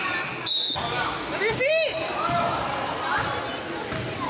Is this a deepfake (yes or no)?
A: no